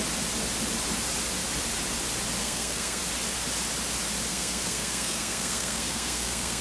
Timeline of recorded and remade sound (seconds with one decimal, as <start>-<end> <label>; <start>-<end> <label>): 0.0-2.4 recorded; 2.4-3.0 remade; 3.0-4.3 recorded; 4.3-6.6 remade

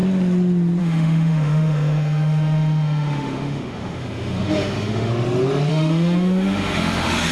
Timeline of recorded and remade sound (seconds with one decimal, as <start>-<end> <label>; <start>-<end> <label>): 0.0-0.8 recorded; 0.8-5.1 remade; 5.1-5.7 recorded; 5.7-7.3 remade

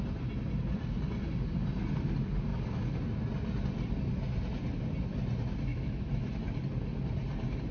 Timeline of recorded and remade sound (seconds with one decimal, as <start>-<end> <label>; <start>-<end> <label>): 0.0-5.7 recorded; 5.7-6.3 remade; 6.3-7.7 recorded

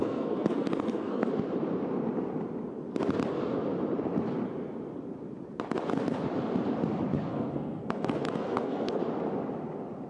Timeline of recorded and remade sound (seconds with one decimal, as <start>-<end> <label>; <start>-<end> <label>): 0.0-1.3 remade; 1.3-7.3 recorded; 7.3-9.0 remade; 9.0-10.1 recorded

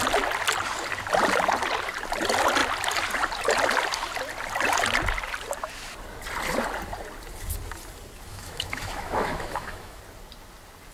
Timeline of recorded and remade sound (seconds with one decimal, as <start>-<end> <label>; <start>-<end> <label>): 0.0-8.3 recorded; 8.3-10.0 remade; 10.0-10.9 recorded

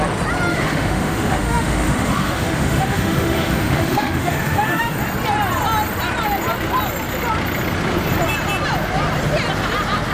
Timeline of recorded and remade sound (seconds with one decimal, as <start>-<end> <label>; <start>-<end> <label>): 0.0-0.5 recorded; 0.5-5.0 remade; 5.0-10.1 recorded